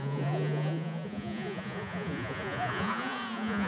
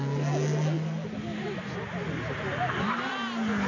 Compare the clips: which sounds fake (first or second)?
first